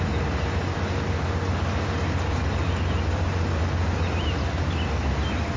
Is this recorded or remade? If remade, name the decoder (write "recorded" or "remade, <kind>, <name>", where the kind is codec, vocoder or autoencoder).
recorded